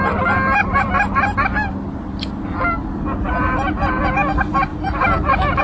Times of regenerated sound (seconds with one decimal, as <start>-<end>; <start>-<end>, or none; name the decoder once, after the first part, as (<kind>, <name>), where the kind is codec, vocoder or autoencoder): 0.6-4.0 (vocoder, BigVGAN v2); 4.7-5.6